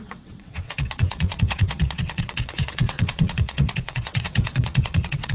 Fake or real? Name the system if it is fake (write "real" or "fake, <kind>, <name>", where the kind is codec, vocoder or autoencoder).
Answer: fake, vocoder, WaveNeXt